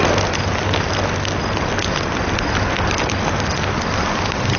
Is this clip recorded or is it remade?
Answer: recorded